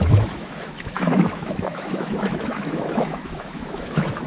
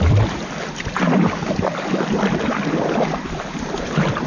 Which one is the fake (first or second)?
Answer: first